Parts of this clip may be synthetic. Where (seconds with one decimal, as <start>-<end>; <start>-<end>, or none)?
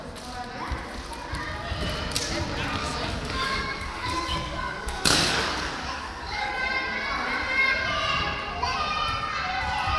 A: 2.8-6.5